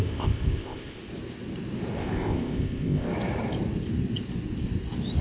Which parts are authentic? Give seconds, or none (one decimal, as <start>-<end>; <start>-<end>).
1.0-2.0; 3.1-5.2